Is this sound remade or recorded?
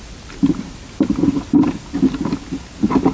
recorded